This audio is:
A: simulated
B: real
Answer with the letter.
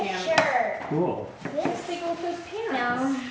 B